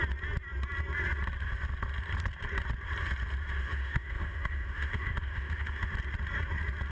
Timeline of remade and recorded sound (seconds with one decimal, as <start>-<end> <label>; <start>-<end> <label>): 0.0-3.6 recorded; 3.6-5.9 remade; 5.9-6.9 recorded

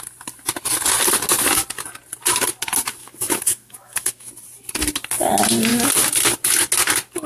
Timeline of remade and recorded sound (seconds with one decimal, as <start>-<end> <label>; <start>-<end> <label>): 0.0-3.0 recorded; 3.0-4.3 remade; 4.3-7.3 recorded

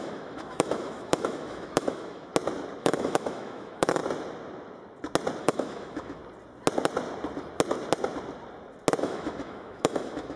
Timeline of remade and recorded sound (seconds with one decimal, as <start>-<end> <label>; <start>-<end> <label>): 0.0-2.3 remade; 2.3-2.8 recorded; 2.8-4.0 remade; 4.0-5.4 recorded; 5.4-6.2 remade; 6.2-9.0 recorded; 9.0-10.4 remade

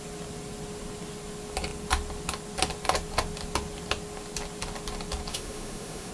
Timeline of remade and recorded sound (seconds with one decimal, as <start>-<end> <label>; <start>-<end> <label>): 0.0-5.3 recorded; 5.3-6.1 remade